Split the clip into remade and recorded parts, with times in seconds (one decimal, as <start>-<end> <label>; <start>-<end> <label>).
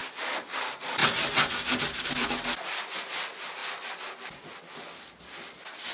0.0-5.9 recorded